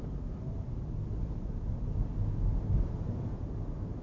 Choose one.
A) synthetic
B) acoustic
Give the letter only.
B